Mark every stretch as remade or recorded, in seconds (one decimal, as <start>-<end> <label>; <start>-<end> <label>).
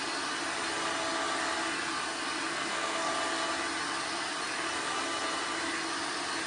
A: 0.0-2.5 recorded; 2.5-3.1 remade; 3.1-6.5 recorded